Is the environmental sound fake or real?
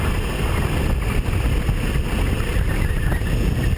real